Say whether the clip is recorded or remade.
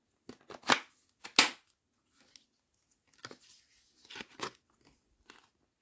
recorded